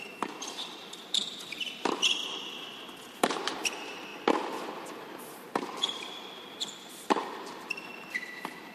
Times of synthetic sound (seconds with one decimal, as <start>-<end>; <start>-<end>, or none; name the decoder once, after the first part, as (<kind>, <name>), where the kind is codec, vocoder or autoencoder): 0.0-2.2 (vocoder, BigVGAN v2); 3.2-4.1; 5.2-7.9